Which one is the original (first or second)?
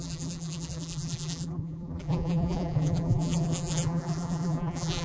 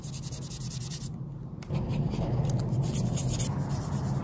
second